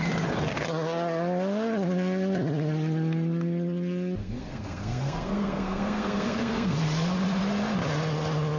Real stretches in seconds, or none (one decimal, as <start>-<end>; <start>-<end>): 0.0-4.2; 6.8-8.6

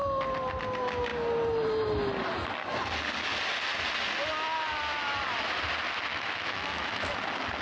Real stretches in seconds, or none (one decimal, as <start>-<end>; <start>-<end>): 0.0-6.1; 7.1-7.6

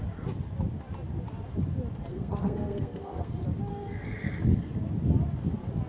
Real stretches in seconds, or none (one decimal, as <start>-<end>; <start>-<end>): 0.0-2.1; 3.3-3.7; 4.4-5.9

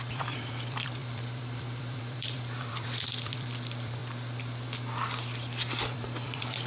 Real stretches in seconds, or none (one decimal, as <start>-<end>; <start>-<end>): 4.0-5.8

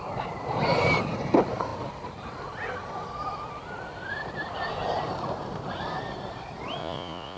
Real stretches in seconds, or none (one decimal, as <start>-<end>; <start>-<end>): 0.0-6.8

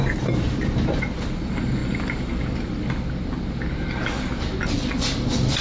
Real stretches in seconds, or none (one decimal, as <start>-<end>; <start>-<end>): 0.0-5.6